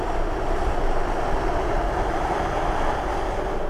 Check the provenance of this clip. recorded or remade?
recorded